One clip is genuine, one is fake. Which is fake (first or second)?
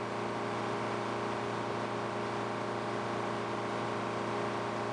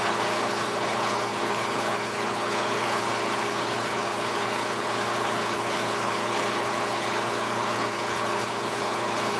second